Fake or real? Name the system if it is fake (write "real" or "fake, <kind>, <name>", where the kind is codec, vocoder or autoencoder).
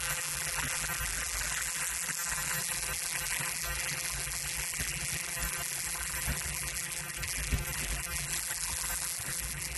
fake, vocoder, BigVGAN v2